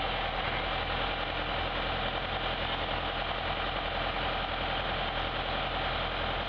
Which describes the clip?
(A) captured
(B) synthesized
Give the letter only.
A